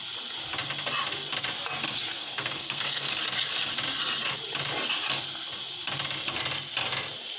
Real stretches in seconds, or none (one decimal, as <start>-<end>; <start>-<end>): 0.0-2.1; 3.1-7.4